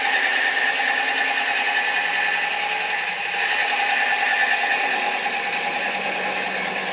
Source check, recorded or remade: recorded